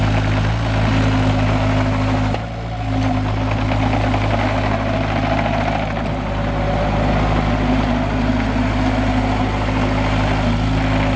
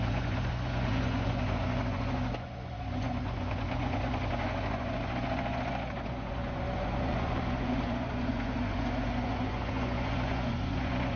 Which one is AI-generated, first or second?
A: second